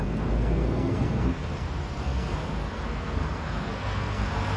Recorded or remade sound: remade